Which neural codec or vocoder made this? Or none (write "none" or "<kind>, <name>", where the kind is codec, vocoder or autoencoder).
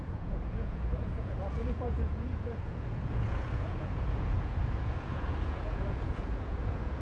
vocoder, Vocos